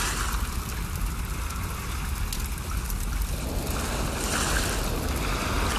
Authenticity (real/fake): real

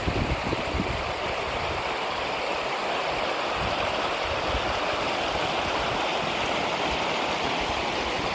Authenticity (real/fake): real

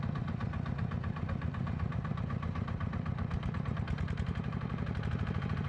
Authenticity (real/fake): fake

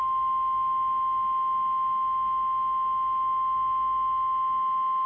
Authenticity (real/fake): real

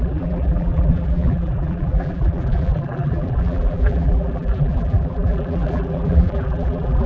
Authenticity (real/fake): fake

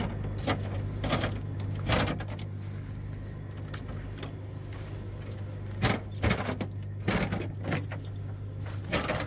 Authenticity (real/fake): real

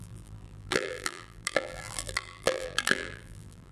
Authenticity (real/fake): fake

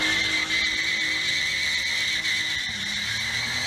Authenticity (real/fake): real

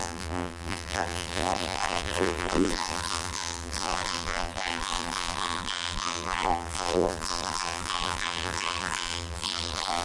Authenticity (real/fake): fake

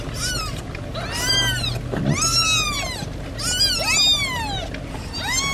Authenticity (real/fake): real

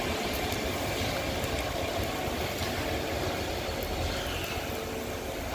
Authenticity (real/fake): real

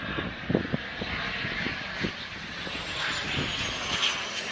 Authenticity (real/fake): real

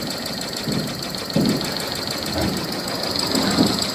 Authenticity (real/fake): real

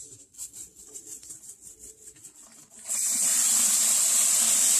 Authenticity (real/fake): fake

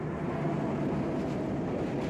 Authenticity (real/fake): real